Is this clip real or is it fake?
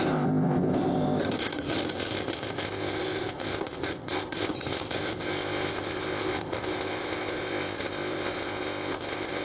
fake